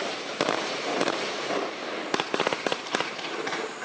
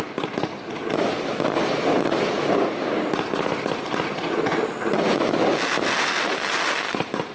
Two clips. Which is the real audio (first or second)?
second